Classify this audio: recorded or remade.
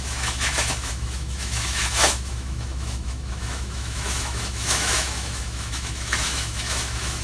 remade